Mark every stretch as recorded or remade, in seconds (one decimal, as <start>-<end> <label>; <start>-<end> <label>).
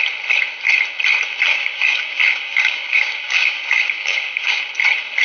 0.0-1.5 recorded; 1.5-4.6 remade; 4.6-5.2 recorded